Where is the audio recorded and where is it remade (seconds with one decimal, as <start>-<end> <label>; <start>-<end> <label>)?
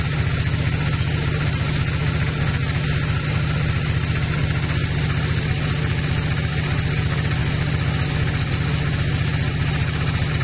0.0-10.4 recorded